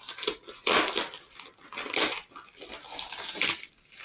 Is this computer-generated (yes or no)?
no